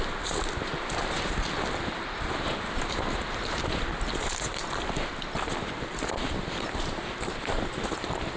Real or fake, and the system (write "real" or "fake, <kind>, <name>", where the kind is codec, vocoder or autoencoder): real